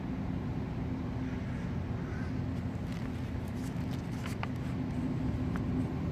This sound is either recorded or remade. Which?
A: recorded